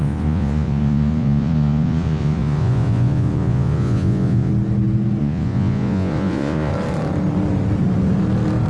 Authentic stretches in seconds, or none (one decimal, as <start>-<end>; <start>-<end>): 4.5-5.2; 6.7-8.7